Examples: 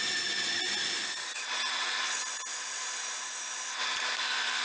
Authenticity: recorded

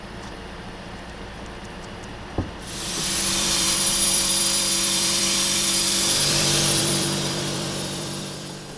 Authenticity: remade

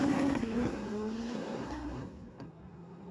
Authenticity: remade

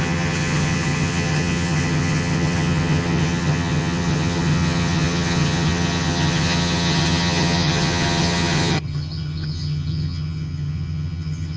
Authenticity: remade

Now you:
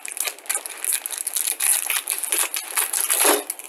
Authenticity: recorded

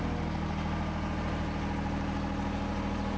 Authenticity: recorded